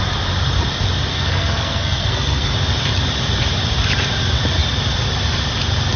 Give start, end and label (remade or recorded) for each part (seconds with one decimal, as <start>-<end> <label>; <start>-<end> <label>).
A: 0.0-1.1 recorded; 1.1-2.5 remade; 2.5-6.0 recorded

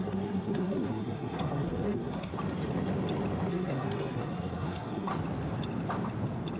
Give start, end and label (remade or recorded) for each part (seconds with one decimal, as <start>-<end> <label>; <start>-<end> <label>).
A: 0.0-2.3 remade; 2.3-3.5 recorded; 3.5-5.1 remade; 5.1-6.6 recorded

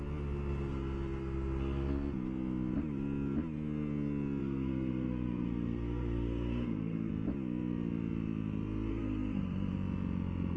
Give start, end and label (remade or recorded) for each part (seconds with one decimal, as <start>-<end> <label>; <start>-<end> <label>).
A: 0.0-4.4 recorded; 4.4-7.1 remade; 7.1-8.9 recorded; 8.9-9.7 remade; 9.7-10.6 recorded

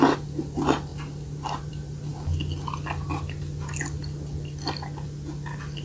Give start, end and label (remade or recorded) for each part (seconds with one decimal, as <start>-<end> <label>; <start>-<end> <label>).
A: 0.0-5.8 recorded

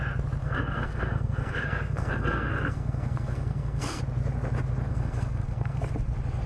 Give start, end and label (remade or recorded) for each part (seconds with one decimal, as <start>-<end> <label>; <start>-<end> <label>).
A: 0.0-0.4 recorded; 0.4-4.0 remade; 4.0-4.9 recorded; 4.9-5.9 remade; 5.9-6.5 recorded

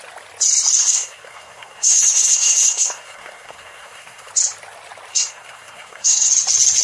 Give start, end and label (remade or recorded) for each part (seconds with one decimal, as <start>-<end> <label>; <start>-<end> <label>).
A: 0.0-0.8 recorded; 0.8-4.3 remade; 4.3-5.1 recorded; 5.1-6.3 remade; 6.3-6.8 recorded